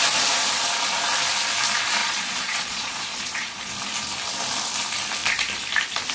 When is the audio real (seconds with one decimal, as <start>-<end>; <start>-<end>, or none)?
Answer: 0.0-2.0; 3.7-6.1